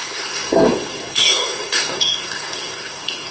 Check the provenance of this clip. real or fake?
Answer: fake